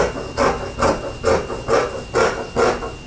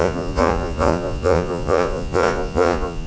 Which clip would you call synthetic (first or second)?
second